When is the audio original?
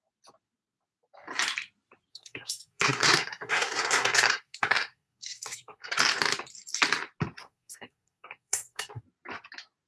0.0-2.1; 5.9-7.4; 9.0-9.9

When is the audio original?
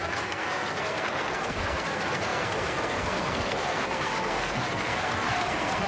none